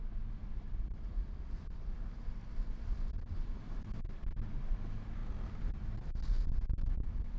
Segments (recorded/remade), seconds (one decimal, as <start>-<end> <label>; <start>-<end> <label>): 0.0-7.4 recorded